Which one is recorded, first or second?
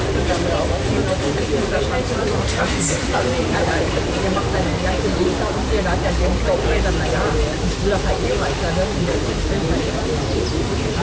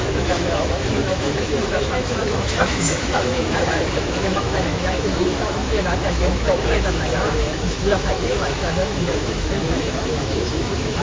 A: first